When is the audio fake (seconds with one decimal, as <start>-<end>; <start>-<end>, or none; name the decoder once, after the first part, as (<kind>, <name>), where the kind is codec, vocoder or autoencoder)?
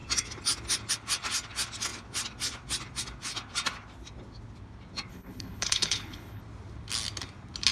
5.1-6.4 (codec, HILCodec)